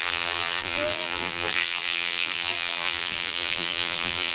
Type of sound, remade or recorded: remade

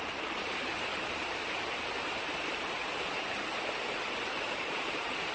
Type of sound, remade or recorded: remade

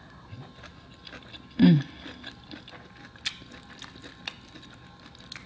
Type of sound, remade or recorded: recorded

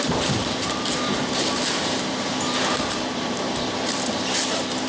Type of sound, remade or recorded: remade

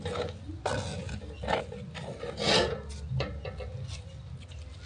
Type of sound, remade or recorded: recorded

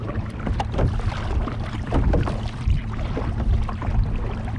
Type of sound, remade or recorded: remade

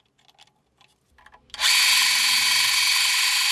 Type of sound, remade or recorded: recorded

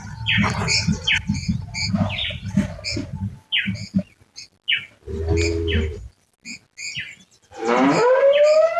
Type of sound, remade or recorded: recorded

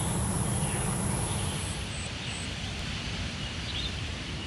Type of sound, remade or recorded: remade